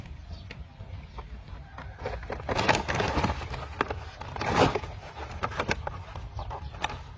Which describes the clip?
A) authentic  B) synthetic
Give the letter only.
A